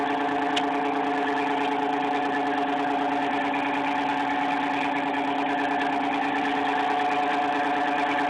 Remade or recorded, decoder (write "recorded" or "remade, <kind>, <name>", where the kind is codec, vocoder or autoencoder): recorded